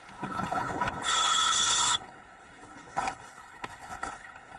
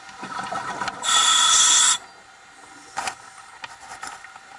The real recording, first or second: second